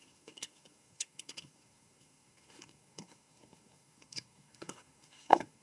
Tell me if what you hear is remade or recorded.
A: remade